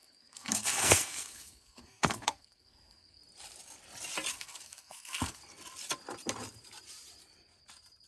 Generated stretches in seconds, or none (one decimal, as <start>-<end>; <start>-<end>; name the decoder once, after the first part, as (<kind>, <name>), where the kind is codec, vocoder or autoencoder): 0.0-3.2 (codec, SNAC); 4.3-5.4